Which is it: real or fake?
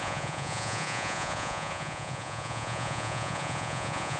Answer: fake